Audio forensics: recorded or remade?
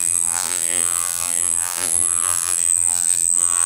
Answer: remade